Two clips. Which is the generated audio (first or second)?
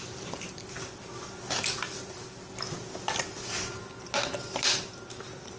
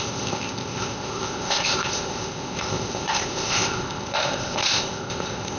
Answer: second